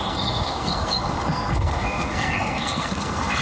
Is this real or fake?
fake